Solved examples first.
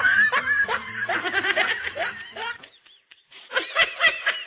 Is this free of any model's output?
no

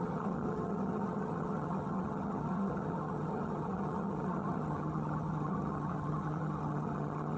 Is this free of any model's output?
no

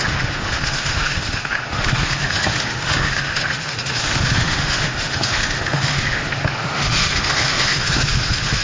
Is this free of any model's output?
no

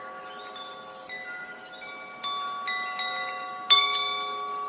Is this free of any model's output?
yes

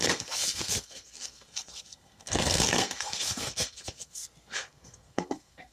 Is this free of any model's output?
no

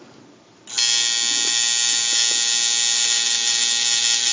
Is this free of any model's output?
yes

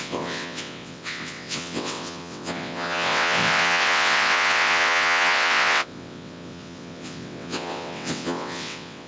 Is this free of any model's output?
no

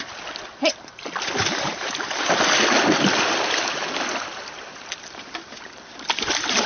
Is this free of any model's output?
yes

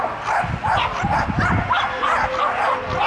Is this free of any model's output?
yes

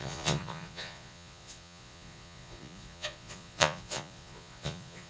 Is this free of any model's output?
no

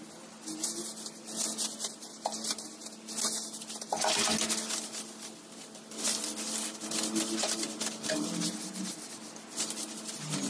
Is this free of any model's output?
yes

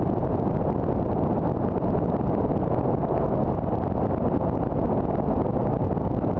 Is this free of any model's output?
no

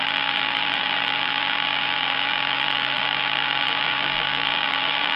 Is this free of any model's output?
no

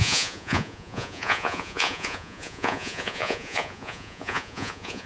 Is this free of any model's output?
no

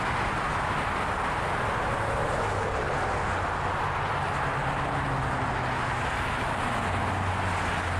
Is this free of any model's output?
yes